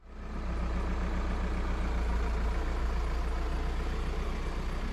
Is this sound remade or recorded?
recorded